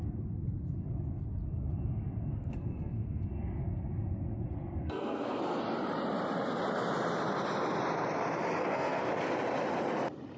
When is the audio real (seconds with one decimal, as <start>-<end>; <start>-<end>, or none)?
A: 0.0-2.3; 3.2-4.8; 5.4-8.6; 9.1-10.4